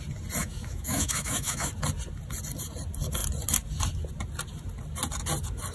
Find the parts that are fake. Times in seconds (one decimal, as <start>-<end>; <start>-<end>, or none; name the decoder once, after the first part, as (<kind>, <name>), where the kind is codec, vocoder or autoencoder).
0.4-1.7 (autoencoder, DAC-VAE)